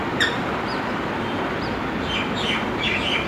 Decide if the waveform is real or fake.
real